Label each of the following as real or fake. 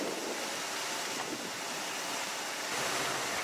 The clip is real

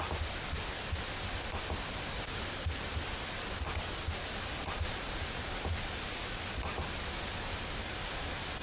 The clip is real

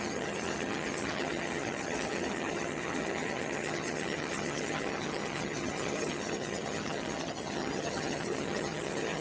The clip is fake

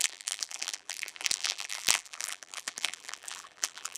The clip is fake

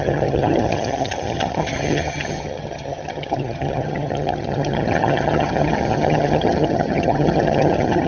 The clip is fake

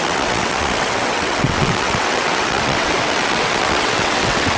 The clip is fake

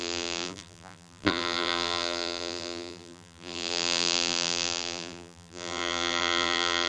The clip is fake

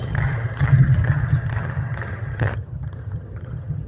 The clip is fake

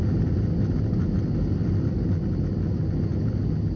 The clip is real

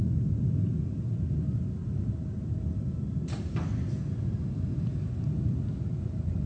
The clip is real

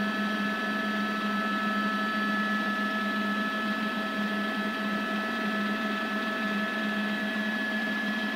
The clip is real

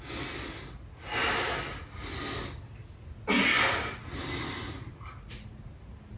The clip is real